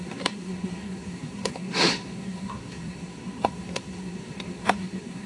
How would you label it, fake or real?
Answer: fake